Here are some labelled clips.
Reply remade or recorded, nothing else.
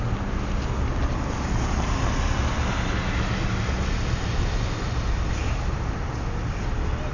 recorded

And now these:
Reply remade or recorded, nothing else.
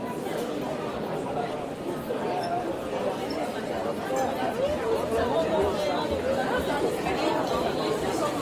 recorded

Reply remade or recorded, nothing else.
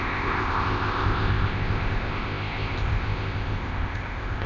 remade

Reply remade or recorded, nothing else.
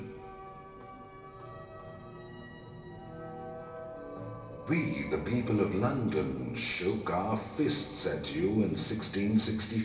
recorded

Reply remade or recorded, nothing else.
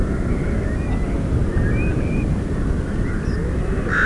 remade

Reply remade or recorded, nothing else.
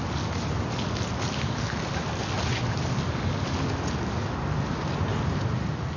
recorded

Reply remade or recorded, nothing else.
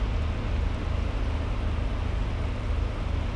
recorded